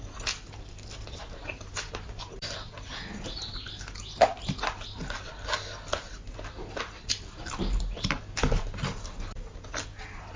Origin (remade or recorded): recorded